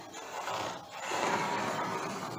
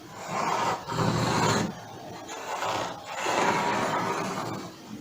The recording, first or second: second